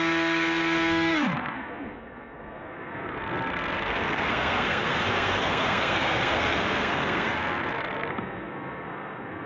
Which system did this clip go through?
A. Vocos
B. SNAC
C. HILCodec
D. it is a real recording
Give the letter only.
B